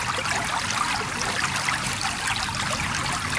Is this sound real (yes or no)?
yes